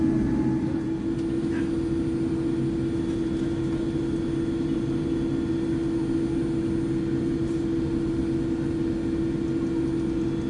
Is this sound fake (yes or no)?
no